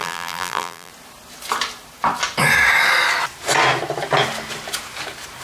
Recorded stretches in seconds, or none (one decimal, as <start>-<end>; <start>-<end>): 0.9-5.4